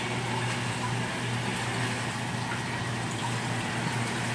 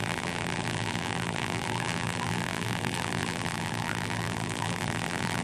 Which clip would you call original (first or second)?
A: first